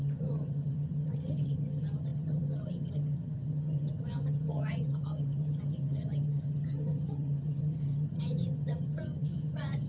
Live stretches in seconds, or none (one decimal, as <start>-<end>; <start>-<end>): none